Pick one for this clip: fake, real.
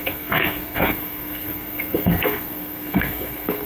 fake